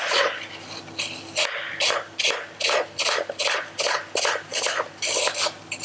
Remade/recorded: recorded